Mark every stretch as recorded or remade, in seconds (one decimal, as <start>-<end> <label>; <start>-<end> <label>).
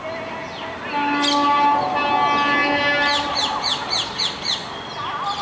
0.0-5.4 recorded